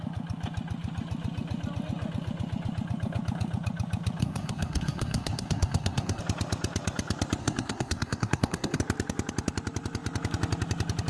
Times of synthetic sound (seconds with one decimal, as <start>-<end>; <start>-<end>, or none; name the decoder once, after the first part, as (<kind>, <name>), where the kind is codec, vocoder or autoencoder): 4.2-6.2 (codec, SNAC); 7.4-8.8

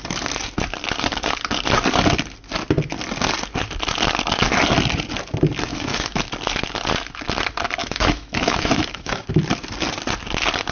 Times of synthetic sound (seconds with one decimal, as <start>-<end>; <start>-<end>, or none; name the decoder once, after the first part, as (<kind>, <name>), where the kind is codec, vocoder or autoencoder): 5.7-6.2 (autoencoder, DAC-VAE); 7.8-9.3